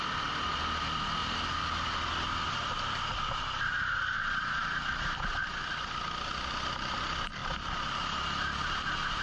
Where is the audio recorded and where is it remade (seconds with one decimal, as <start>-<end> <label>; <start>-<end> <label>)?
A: 0.0-9.2 recorded